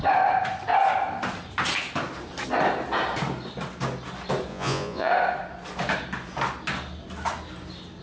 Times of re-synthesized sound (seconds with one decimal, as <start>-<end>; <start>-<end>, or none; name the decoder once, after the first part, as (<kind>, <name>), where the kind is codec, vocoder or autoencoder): 4.5-5.1 (vocoder, Vocos)